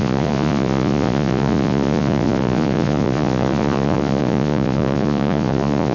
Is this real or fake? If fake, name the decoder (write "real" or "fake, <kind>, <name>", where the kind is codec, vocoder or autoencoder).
fake, vocoder, Vocos